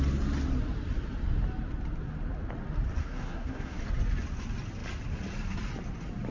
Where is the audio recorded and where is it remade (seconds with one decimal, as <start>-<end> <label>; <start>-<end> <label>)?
0.0-3.0 recorded; 3.0-3.8 remade; 3.8-6.3 recorded